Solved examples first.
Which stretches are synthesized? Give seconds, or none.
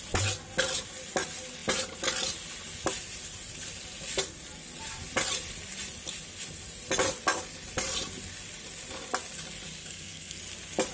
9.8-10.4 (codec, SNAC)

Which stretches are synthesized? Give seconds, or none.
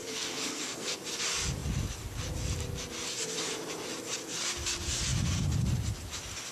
0.0-1.0 (codec, SNAC)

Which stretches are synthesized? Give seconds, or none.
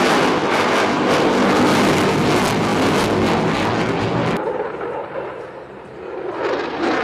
none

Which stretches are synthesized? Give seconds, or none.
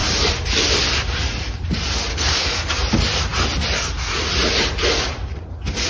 2.1-2.7 (codec, SNAC)